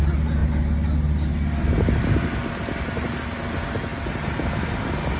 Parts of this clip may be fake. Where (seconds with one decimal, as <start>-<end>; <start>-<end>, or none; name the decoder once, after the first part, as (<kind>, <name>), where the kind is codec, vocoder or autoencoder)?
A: none